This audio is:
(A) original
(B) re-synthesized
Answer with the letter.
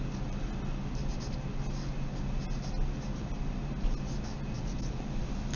A